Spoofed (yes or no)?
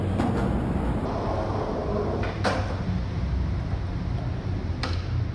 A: no